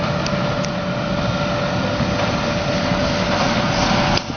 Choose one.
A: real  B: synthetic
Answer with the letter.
A